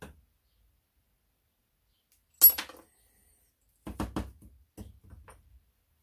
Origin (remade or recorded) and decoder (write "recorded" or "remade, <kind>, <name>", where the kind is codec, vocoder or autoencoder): recorded